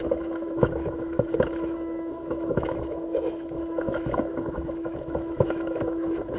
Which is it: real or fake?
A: fake